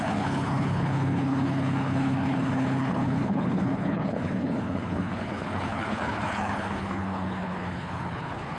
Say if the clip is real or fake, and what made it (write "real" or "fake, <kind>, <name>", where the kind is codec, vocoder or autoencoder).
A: fake, codec, HILCodec